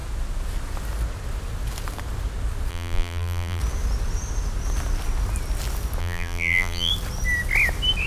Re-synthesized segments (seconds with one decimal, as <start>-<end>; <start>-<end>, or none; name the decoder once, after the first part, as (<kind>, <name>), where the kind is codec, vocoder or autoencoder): 2.7-3.6 (vocoder, BigVGAN v2); 6.0-6.9